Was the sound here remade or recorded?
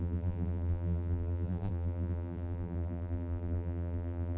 remade